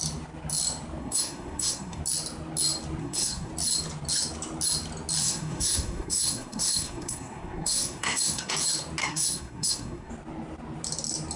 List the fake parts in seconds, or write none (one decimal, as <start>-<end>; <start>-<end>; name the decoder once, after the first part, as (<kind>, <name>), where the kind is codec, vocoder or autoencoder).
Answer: 1.0-2.0 (codec, SNAC); 3.0-3.5; 5.2-8.5; 9.0-10.1